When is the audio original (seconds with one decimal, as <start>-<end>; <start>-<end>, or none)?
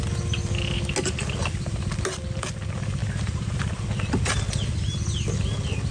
0.0-1.4; 1.9-3.0; 3.8-5.9